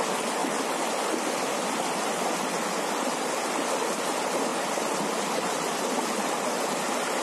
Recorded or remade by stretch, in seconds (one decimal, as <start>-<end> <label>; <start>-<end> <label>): 0.0-7.2 recorded